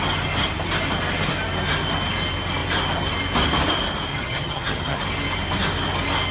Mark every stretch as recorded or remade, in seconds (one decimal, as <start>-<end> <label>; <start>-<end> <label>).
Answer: 0.0-4.1 recorded; 4.1-5.0 remade; 5.0-6.3 recorded